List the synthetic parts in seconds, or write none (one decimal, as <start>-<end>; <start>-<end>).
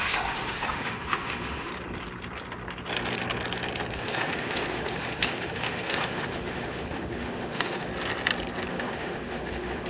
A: 0.0-1.7; 3.9-7.9; 8.7-9.9